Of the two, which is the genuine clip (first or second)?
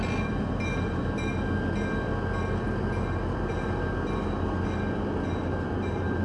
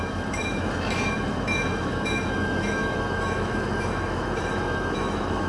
first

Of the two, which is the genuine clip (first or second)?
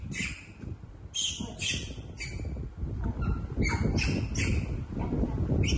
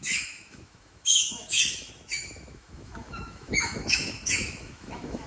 first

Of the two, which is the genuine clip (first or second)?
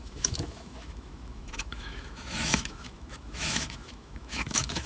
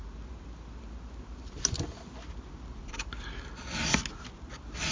second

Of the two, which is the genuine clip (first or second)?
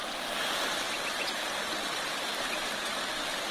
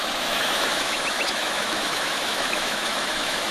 first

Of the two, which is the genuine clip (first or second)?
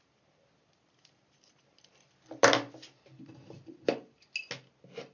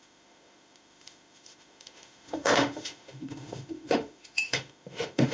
first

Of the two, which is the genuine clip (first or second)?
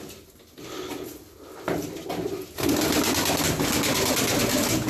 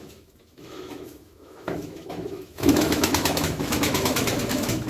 first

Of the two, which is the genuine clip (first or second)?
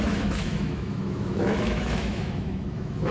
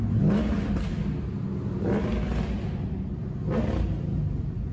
second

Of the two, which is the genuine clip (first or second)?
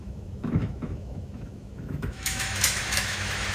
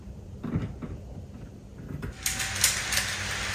second